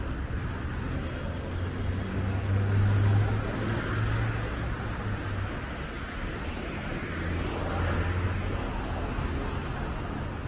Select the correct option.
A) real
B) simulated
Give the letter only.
A